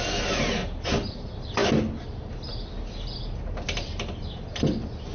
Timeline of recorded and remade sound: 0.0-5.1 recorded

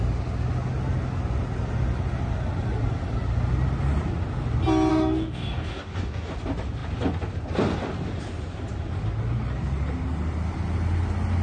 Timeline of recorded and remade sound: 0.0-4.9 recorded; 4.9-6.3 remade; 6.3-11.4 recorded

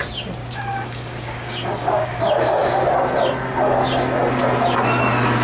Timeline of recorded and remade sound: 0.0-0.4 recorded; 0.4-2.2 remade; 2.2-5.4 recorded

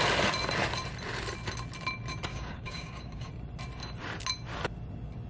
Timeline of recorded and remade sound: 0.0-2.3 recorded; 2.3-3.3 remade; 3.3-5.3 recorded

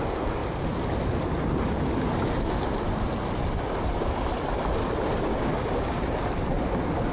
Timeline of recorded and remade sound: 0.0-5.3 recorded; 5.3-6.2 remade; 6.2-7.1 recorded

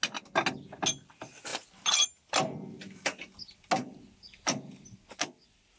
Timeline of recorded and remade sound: 0.0-5.8 recorded